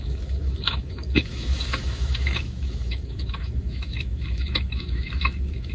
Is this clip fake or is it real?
fake